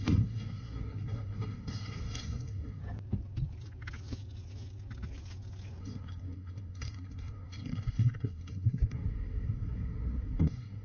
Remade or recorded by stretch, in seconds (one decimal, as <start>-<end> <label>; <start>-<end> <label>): 0.0-2.8 remade; 2.8-5.8 recorded; 5.8-10.8 remade